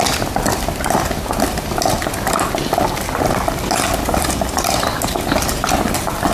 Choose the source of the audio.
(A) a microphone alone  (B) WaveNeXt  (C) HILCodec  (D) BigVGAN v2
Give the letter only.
A